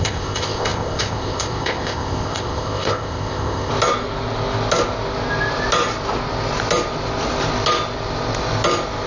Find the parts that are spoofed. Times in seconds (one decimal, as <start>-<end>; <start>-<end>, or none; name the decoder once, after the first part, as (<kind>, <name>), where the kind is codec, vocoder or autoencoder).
0.0-3.7 (codec, ZipCodec)